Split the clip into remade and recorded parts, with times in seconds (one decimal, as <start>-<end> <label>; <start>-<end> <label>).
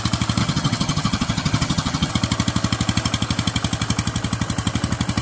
0.0-0.4 recorded; 0.4-2.1 remade; 2.1-5.2 recorded